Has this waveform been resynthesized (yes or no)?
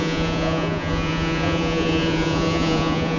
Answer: yes